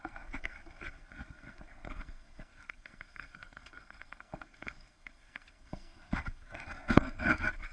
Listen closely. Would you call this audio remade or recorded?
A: remade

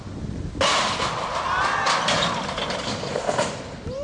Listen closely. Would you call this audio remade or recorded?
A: recorded